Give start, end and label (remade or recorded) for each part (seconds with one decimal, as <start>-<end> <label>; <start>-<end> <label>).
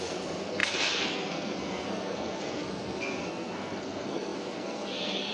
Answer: 0.0-5.3 remade